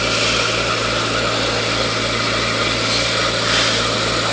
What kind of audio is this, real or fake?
real